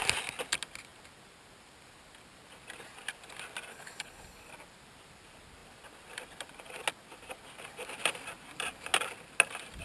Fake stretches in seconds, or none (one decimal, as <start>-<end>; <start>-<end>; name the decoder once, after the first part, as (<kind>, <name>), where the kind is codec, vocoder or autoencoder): 3.7-4.5 (codec, HILCodec)